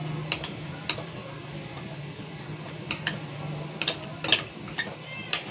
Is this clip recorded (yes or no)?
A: yes